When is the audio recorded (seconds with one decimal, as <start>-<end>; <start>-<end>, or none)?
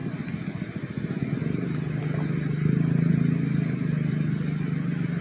0.0-5.2